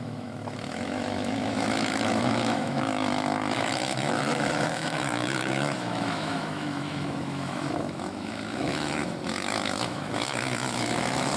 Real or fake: fake